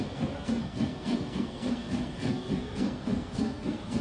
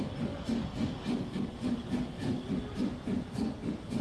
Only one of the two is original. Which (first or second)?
second